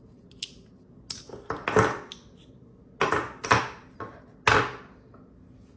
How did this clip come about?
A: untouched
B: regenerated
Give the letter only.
A